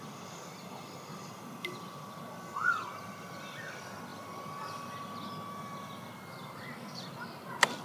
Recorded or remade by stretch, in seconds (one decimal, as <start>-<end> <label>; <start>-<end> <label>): 0.0-7.8 recorded